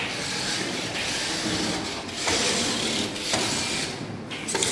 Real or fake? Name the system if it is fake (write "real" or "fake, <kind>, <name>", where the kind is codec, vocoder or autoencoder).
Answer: real